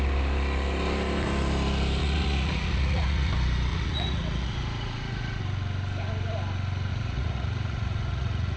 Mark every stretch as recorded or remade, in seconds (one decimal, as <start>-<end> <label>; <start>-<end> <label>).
0.0-2.0 recorded; 2.0-3.3 remade; 3.3-3.7 recorded; 3.7-5.4 remade; 5.4-6.9 recorded; 6.9-8.6 remade